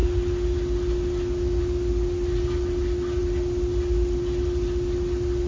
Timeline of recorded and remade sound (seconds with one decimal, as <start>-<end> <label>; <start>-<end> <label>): 0.0-5.5 recorded